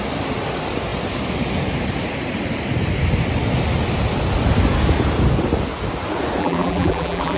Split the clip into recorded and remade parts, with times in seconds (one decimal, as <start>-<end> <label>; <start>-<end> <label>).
0.0-6.4 recorded; 6.4-7.4 remade